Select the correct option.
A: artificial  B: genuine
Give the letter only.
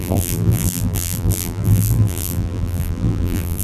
A